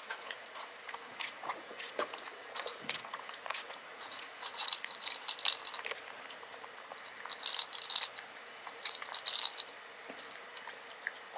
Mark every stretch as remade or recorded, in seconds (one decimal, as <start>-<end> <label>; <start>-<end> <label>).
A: 0.0-5.0 remade; 5.0-8.4 recorded; 8.4-9.0 remade; 9.0-11.4 recorded